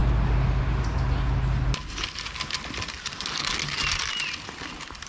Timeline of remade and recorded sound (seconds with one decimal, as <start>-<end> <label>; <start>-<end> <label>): 0.0-5.1 recorded